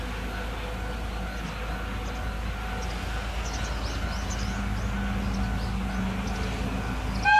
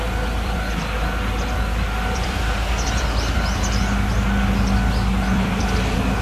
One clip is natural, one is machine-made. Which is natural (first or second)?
first